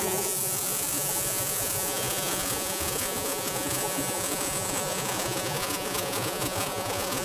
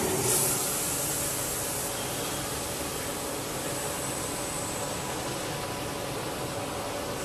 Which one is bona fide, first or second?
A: second